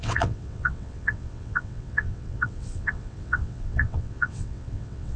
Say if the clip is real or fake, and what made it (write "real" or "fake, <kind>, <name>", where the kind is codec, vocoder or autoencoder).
fake, vocoder, WaveNeXt